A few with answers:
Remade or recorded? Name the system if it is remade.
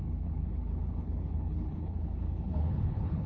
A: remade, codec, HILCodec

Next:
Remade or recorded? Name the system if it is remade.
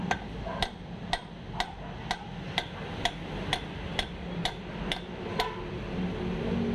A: recorded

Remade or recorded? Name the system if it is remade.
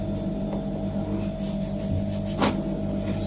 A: recorded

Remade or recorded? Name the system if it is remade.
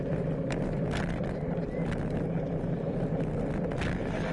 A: recorded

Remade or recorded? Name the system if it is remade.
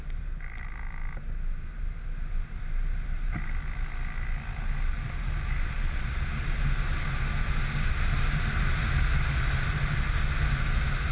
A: recorded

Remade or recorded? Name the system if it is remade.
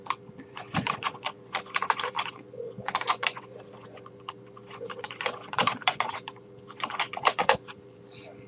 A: remade, vocoder, Vocos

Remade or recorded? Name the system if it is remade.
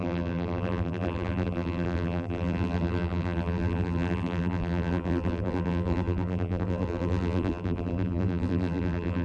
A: remade, vocoder, BigVGAN v2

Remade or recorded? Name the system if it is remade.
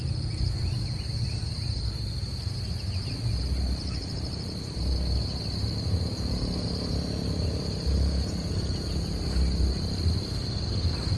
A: recorded